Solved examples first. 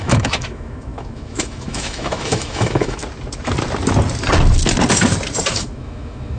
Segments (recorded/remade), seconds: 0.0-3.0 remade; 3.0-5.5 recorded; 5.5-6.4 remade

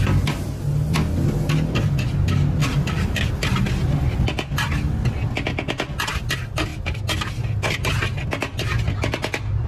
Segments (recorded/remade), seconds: 0.0-2.6 recorded; 2.6-3.3 remade; 3.3-9.7 recorded

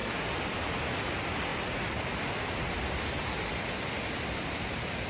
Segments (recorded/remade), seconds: 0.0-5.1 recorded

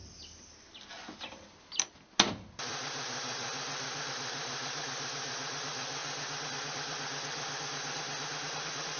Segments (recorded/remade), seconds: 0.0-9.0 recorded